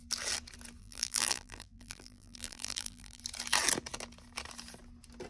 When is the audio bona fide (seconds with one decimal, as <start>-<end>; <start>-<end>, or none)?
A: 0.0-0.8; 3.2-5.3